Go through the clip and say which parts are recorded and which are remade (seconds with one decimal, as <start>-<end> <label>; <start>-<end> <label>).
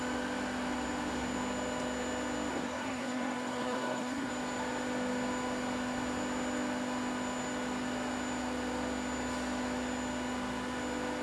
0.0-2.5 recorded; 2.5-4.3 remade; 4.3-11.2 recorded